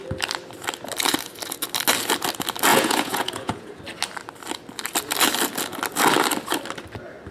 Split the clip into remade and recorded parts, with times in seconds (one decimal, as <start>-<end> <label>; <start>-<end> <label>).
0.0-2.7 recorded; 2.7-3.8 remade; 3.8-7.3 recorded